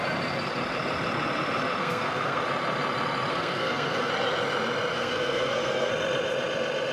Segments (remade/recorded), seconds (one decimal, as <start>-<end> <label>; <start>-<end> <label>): 0.0-1.8 recorded; 1.8-2.4 remade; 2.4-3.3 recorded; 3.3-4.1 remade; 4.1-4.9 recorded; 4.9-5.9 remade; 5.9-6.9 recorded